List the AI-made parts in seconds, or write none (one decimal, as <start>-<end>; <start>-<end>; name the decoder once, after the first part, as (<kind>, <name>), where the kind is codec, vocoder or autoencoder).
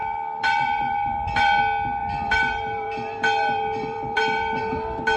0.0-1.6 (vocoder, BigVGAN v2); 2.0-4.6